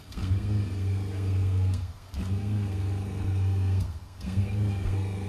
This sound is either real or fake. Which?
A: fake